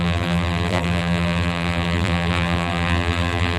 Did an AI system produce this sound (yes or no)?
yes